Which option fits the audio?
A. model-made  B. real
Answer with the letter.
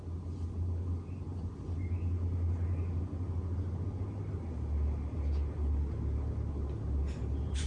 B